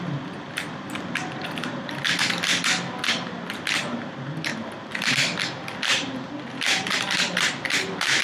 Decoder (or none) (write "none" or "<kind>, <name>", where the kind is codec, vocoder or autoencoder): none